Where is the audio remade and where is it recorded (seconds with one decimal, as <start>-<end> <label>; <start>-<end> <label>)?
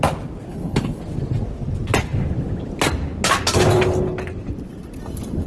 0.0-0.5 recorded; 0.5-1.0 remade; 1.0-5.5 recorded